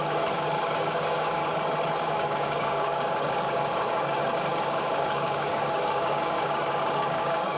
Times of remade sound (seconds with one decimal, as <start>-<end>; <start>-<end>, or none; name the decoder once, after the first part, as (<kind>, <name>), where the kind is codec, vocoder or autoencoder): 0.0-1.4 (codec, DAC); 2.0-7.6